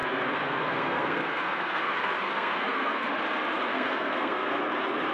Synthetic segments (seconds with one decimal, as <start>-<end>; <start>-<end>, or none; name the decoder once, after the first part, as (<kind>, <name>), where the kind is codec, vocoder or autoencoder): 0.0-3.1 (codec, SNAC); 3.7-4.6